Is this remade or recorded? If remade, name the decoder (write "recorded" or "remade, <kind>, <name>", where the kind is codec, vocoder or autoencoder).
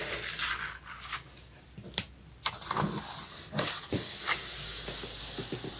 recorded